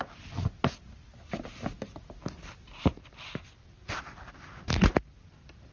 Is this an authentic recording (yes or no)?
yes